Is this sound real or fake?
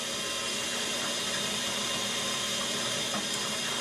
real